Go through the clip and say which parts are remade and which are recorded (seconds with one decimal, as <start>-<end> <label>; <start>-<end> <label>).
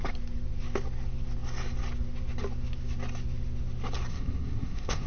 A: 0.0-4.1 recorded; 4.1-5.1 remade